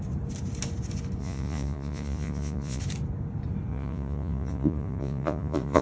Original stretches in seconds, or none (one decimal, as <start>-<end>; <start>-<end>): 0.0-1.2; 2.8-3.7